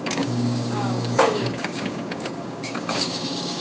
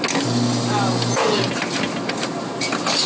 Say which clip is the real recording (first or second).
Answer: second